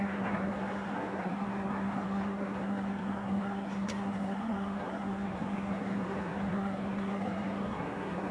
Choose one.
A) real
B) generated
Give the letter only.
B